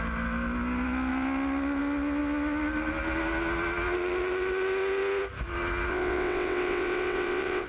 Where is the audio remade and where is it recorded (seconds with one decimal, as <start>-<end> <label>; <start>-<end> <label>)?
0.0-5.9 recorded; 5.9-7.7 remade